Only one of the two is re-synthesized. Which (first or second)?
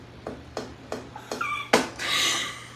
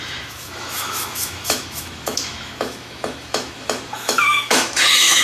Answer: second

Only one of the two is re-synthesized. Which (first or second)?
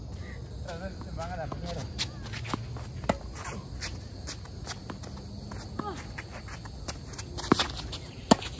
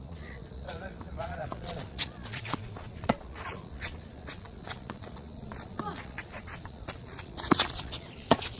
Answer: second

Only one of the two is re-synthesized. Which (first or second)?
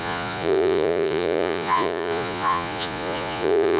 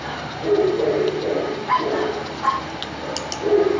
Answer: first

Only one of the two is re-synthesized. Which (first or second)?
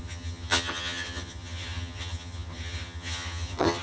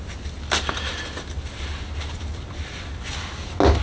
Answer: first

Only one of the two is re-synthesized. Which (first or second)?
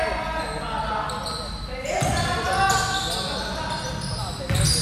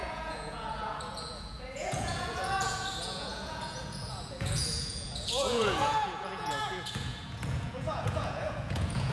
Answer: second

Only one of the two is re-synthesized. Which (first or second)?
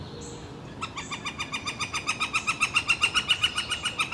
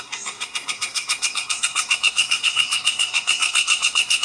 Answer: second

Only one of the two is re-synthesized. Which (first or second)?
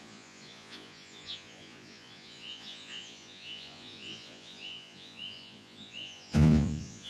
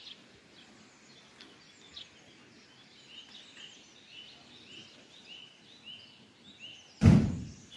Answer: first